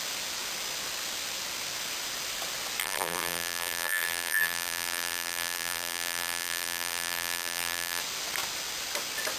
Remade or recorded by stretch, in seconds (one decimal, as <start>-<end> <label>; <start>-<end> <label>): 0.0-2.8 recorded; 2.8-8.0 remade; 8.0-9.4 recorded